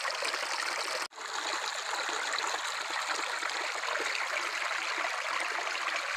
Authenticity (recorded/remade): recorded